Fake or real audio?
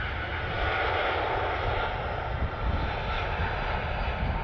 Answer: real